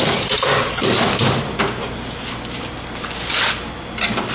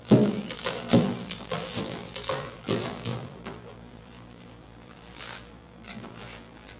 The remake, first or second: second